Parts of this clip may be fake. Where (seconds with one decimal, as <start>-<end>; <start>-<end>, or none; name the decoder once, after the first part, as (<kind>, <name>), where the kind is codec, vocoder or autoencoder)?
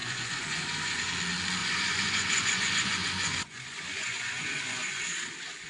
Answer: 0.0-1.1 (vocoder, Vocos); 1.6-5.0